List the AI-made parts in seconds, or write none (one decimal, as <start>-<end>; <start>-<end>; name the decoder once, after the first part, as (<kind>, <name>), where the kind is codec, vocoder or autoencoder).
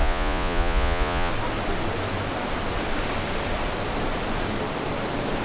0.0-1.3 (vocoder, Vocos)